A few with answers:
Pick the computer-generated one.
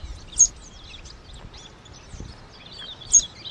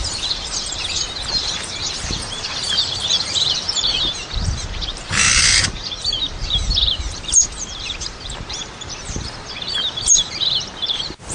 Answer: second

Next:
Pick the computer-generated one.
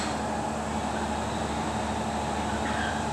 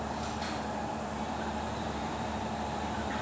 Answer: second